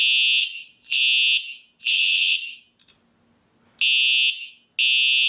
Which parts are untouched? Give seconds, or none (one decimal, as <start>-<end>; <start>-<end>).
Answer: 0.0-0.4; 1.0-1.8; 2.6-5.3

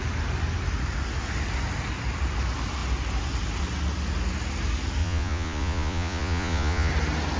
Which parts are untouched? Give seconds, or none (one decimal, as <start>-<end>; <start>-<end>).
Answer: 0.0-5.0; 6.9-7.4

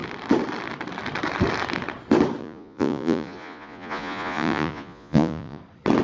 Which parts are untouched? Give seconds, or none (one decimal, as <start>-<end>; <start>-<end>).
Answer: 0.0-2.4; 5.6-6.0

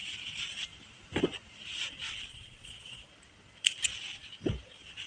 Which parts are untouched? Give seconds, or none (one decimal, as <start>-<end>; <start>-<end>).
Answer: 0.0-2.3; 3.1-5.1

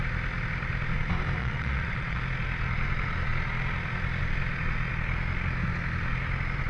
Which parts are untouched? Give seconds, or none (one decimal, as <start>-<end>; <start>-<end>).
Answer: 0.0-1.4; 2.2-6.7